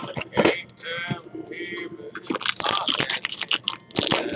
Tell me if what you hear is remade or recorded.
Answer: recorded